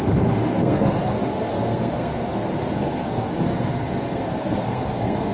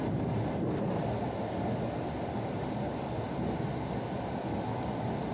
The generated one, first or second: first